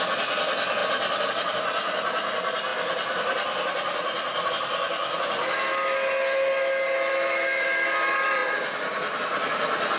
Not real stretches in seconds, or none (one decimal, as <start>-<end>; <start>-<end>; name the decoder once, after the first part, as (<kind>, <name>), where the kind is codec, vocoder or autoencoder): none